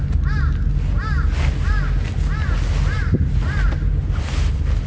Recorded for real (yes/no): yes